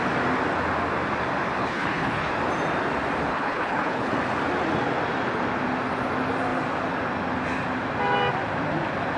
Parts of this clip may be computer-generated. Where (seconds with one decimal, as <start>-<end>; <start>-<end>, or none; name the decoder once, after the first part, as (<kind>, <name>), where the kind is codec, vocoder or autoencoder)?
1.6-2.3 (codec, HILCodec); 3.3-4.1